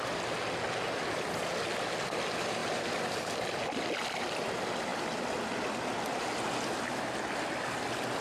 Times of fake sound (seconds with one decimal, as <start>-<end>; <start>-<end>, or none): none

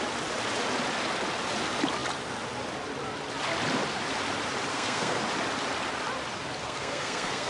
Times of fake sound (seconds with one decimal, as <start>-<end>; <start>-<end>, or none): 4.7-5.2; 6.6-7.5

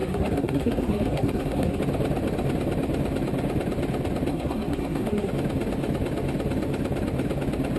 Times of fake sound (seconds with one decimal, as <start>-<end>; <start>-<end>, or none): 0.0-1.8; 4.3-5.3